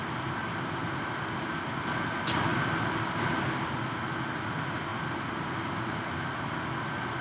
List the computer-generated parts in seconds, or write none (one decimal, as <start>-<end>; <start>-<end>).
none